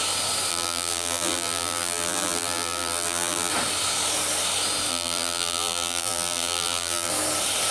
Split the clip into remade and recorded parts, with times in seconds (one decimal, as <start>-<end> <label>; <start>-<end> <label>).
0.0-0.5 recorded; 0.5-3.5 remade; 3.5-4.9 recorded; 4.9-7.1 remade; 7.1-7.7 recorded